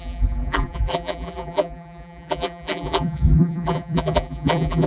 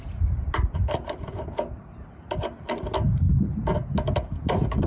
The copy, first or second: first